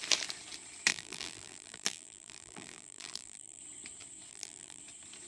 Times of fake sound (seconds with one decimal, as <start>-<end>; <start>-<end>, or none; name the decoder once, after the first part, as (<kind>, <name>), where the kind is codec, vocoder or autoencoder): 0.9-3.6 (vocoder, BigVGAN v2); 4.3-4.8

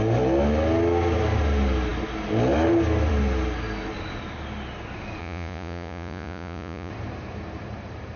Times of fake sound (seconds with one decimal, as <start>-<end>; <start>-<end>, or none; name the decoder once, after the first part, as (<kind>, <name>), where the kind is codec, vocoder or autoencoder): 5.2-6.9 (vocoder, Vocos)

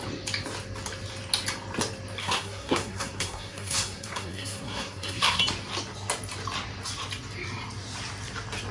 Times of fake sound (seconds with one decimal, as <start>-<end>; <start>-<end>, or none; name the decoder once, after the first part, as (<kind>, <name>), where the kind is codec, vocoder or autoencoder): 2.2-5.4 (codec, SNAC)

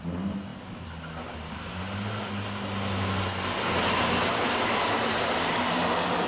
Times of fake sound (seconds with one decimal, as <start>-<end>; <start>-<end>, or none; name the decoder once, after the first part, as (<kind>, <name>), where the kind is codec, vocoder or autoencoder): none

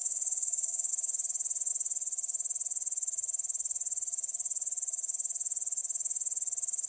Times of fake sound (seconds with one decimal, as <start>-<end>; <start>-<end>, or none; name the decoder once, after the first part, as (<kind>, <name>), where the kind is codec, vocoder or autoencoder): 0.0-0.9 (autoencoder, DAC-VAE)